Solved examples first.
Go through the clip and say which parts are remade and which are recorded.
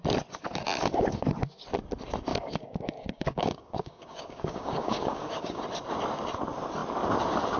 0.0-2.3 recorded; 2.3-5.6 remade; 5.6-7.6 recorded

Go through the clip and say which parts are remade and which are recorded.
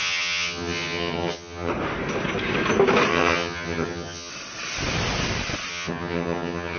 0.0-1.7 remade; 1.7-3.1 recorded; 3.1-4.3 remade; 4.3-5.7 recorded; 5.7-6.8 remade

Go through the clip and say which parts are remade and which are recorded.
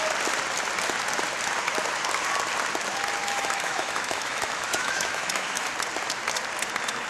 0.0-3.2 recorded; 3.2-5.7 remade; 5.7-7.1 recorded